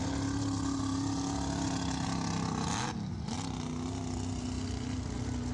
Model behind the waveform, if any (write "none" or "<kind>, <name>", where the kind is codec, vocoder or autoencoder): none